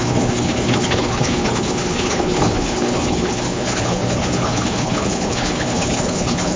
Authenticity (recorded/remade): remade